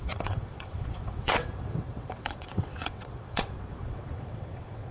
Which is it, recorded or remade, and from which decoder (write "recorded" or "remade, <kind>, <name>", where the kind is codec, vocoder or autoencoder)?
remade, vocoder, WaveNeXt